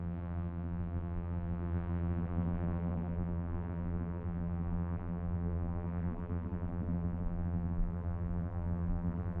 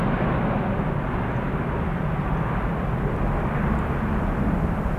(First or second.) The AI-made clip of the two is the first